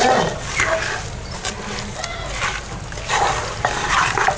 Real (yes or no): yes